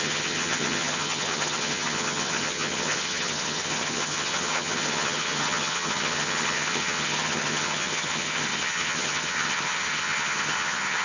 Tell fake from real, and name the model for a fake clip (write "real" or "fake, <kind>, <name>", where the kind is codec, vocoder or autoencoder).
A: fake, vocoder, HiFi-GAN